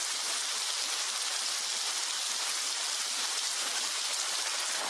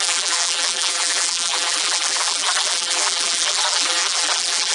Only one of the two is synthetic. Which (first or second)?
second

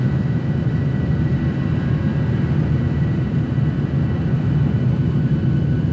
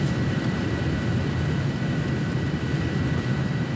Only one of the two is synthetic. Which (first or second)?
second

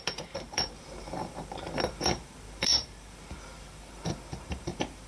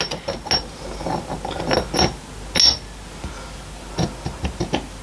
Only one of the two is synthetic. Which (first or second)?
first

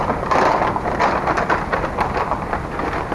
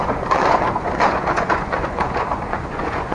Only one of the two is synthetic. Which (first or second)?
second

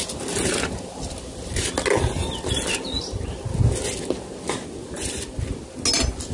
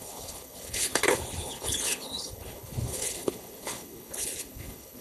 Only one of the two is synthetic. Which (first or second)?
second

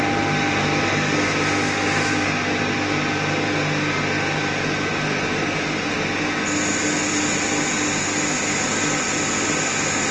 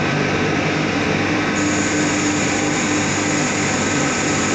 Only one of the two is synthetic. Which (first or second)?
second